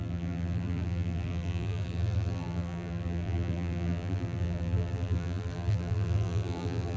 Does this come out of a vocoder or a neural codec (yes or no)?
yes